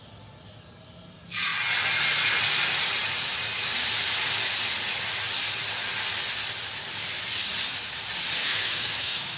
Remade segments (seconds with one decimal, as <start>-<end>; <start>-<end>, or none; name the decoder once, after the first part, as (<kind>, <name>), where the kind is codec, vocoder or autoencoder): 8.4-9.4 (autoencoder, DAC-VAE)